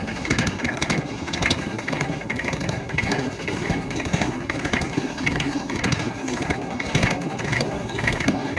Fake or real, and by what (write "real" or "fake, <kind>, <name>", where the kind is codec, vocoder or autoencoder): fake, codec, SNAC